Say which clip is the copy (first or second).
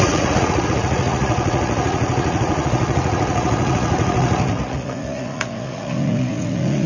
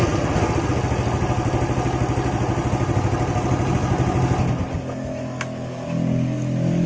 first